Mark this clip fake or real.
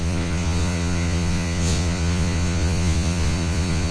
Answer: fake